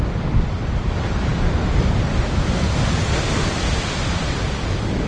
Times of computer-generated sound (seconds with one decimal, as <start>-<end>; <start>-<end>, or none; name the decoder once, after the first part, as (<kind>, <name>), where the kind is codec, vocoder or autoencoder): 0.0-5.1 (vocoder, BigVGAN v2)